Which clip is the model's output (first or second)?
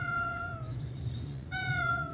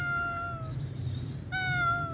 first